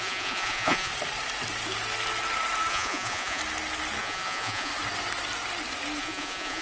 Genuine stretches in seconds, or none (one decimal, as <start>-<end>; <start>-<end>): 0.9-2.7; 3.4-4.0; 4.7-6.0